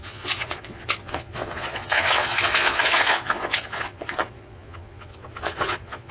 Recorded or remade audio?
remade